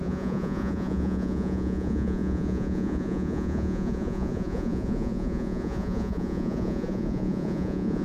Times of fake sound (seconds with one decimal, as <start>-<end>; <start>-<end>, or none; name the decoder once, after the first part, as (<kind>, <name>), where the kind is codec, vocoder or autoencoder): 0.0-8.0 (vocoder, Vocos)